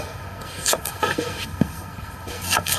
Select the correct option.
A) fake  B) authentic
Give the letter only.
A